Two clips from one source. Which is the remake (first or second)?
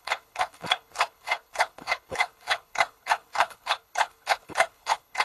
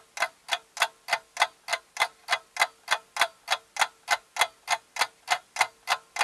first